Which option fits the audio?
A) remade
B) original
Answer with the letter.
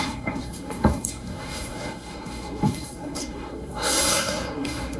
A